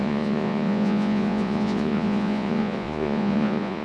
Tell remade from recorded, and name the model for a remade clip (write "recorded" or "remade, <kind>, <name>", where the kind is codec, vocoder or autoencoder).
remade, vocoder, Vocos